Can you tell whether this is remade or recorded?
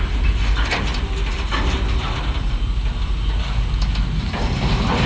recorded